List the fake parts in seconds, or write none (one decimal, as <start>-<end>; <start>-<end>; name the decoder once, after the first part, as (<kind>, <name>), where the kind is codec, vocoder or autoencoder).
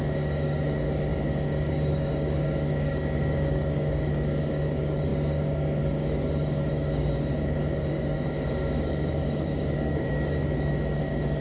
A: 0.0-11.4 (codec, DAC)